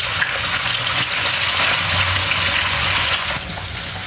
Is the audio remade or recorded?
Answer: remade